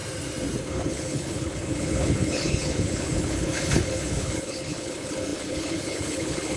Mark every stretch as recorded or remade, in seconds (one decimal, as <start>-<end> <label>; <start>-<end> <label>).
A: 0.0-0.6 recorded; 0.6-6.6 remade